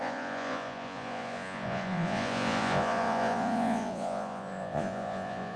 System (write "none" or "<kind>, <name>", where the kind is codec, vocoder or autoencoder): vocoder, Vocos